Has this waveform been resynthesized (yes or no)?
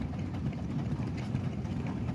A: yes